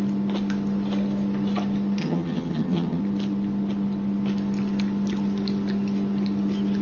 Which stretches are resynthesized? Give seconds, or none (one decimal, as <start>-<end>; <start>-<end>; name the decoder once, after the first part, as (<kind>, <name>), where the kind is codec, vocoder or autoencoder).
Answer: 2.0-3.0 (vocoder, HiFi-GAN)